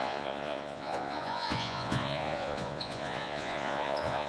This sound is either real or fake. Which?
fake